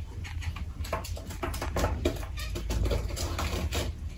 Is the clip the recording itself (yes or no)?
yes